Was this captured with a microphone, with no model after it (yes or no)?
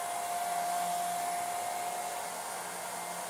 yes